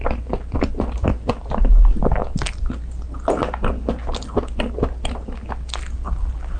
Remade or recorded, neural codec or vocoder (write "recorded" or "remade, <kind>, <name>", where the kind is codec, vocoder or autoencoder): recorded